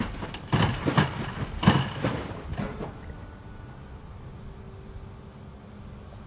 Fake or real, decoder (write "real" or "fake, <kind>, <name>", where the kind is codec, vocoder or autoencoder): real